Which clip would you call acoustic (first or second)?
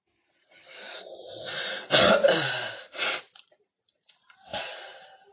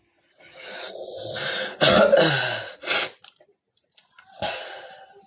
second